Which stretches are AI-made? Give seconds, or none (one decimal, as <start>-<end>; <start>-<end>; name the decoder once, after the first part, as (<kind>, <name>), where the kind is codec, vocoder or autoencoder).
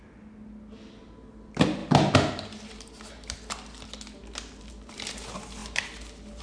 none